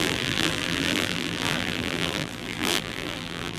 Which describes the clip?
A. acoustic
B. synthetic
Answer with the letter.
B